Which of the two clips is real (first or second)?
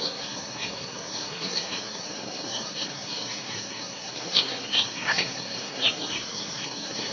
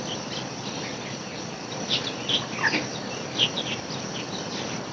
second